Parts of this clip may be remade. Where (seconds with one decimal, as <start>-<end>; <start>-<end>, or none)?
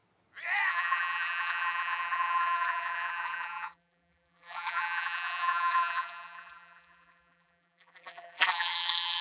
0.7-9.2